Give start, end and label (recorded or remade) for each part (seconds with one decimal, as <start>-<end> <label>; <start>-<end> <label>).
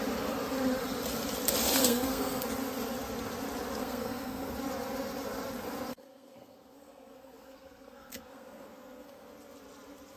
0.0-1.8 recorded; 1.8-2.4 remade; 2.4-3.8 recorded; 3.8-4.5 remade; 4.5-5.9 recorded; 5.9-9.3 remade; 9.3-10.2 recorded